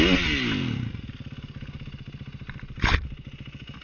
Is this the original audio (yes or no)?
yes